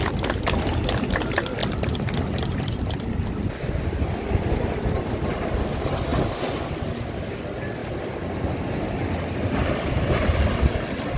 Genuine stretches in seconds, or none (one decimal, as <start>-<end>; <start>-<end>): 0.0-11.2